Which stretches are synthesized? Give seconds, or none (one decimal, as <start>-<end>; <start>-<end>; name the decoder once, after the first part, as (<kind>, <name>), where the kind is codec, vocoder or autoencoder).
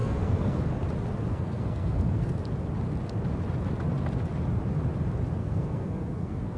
0.0-0.6 (codec, SNAC); 1.3-2.4; 5.4-6.6